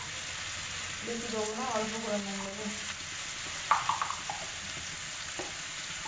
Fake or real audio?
real